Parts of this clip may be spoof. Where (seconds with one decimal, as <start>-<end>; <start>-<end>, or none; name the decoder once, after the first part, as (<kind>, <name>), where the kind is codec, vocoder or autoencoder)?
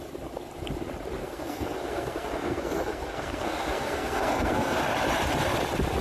1.2-4.8 (codec, SNAC)